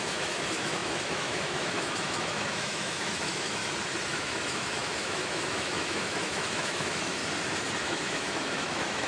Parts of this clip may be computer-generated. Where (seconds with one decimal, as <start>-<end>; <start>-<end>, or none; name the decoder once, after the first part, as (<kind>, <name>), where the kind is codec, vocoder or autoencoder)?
0.0-3.6 (autoencoder, DAC-VAE); 4.1-7.2; 7.8-9.1

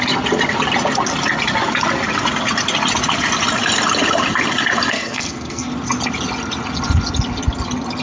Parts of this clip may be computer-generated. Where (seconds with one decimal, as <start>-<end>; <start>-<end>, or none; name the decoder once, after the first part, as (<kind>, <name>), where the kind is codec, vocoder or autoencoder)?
4.9-5.7 (codec, SNAC)

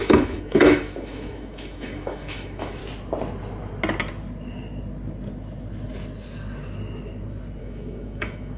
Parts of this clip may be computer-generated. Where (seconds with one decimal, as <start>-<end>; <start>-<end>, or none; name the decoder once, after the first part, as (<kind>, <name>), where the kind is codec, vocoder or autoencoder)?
0.0-2.8 (autoencoder, DAC-VAE); 7.6-8.6

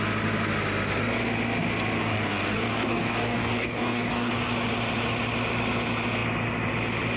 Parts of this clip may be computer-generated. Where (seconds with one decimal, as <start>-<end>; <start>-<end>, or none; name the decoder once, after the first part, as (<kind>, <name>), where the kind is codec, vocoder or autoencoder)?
2.0-4.3 (codec, DAC)

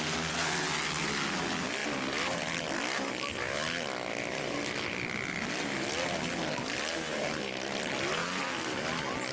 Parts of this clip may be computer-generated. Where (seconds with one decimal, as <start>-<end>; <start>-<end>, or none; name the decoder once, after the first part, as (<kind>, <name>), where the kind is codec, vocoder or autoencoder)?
none

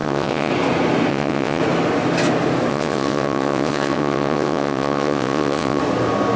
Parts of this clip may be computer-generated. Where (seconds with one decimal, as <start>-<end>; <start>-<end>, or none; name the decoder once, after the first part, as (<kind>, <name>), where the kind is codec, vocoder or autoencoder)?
0.0-0.5 (vocoder, WaveNeXt); 1.1-1.6; 2.7-5.8

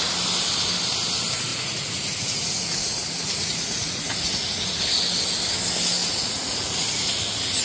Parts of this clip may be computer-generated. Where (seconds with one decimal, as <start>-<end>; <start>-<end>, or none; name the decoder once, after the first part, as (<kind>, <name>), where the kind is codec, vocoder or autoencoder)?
1.5-4.8 (vocoder, Vocos); 6.0-7.1

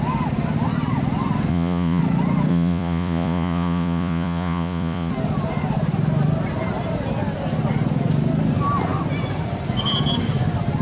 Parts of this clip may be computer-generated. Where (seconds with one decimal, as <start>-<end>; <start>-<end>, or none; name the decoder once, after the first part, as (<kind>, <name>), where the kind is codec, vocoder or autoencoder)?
1.5-2.0 (vocoder, Vocos); 2.5-5.1